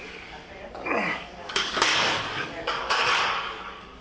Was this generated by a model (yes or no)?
yes